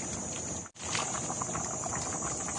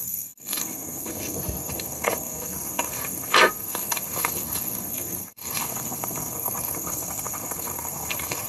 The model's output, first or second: second